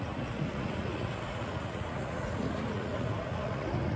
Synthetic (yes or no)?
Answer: yes